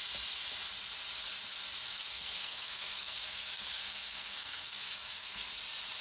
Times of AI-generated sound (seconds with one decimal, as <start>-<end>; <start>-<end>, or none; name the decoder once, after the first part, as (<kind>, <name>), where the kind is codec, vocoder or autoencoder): 1.9-5.5 (codec, SNAC)